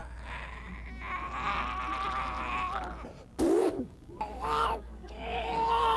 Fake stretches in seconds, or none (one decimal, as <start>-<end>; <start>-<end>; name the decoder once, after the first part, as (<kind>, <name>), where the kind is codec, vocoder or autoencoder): 3.6-6.0 (codec, DAC)